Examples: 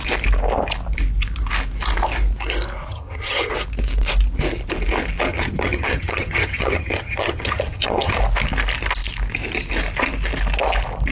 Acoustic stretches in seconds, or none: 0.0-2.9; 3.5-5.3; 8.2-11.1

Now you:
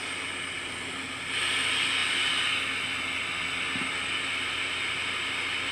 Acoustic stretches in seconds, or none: 0.0-5.7

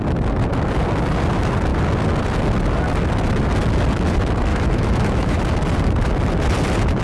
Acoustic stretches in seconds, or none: 0.0-4.5; 5.4-7.0

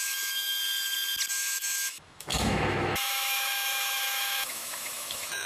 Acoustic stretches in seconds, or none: 0.6-1.3

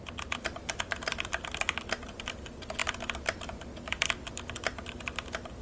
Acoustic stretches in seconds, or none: 0.0-5.6